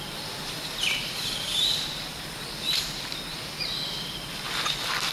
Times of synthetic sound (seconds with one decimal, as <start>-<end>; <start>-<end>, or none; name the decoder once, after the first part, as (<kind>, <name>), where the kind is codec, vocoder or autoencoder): 0.4-3.5 (vocoder, BigVGAN v2)